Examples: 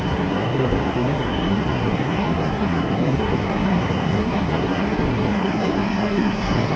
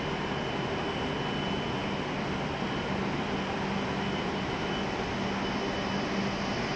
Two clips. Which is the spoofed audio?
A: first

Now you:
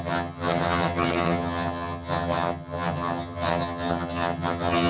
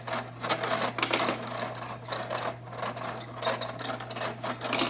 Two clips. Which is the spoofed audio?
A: first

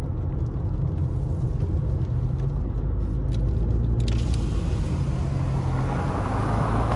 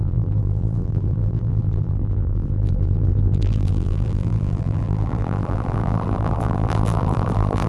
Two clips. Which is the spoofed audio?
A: second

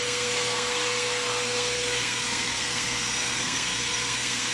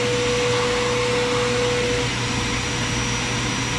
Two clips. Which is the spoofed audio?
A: first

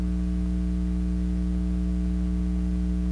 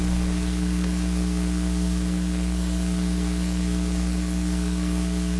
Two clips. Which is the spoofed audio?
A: second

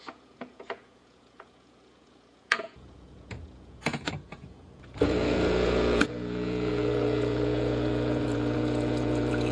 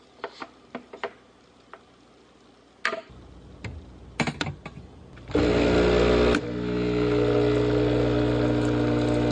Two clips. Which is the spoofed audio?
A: first